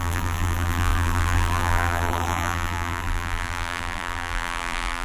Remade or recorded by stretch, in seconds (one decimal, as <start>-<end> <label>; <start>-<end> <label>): 0.0-5.0 remade